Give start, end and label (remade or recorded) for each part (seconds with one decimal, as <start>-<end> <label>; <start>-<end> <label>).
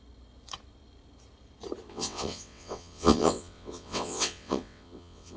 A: 0.0-1.9 recorded; 1.9-5.4 remade